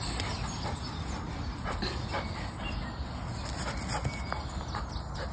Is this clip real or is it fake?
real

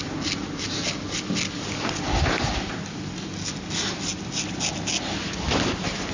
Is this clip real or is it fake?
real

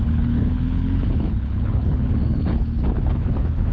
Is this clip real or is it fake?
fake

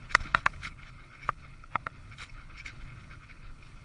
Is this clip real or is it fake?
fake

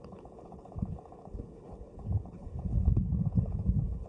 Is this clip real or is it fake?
fake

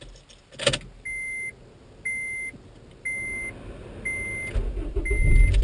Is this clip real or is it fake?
real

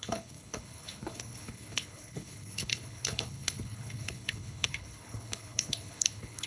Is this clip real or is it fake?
fake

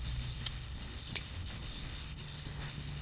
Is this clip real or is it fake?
fake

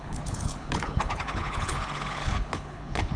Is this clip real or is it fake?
fake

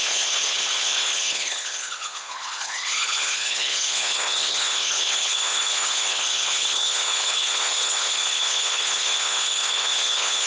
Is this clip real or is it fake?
fake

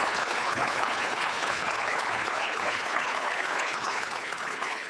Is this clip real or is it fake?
fake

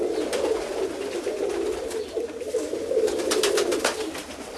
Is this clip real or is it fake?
real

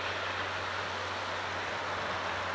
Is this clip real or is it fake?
real